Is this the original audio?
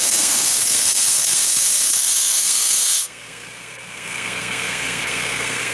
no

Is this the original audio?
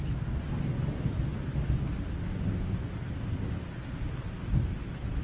yes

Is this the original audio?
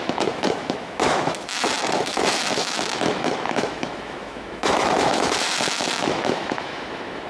no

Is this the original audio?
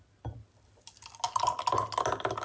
yes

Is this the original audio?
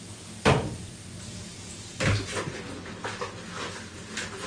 yes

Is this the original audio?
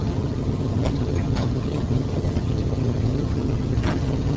no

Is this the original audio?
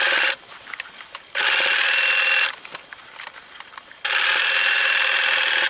yes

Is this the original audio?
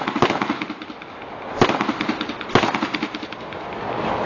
yes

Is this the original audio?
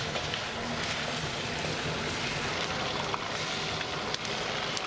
yes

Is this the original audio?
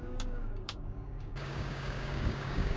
no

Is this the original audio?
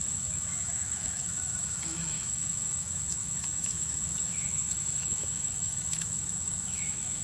no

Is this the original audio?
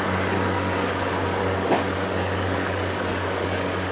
no